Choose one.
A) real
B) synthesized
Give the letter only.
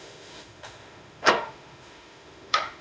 B